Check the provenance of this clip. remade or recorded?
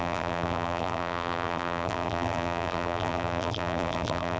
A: remade